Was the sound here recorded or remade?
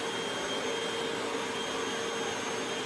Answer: recorded